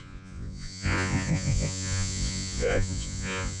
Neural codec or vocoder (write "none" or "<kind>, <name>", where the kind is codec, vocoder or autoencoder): vocoder, Vocos